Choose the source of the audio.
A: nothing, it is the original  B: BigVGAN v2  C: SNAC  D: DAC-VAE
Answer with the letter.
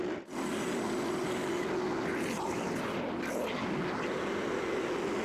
A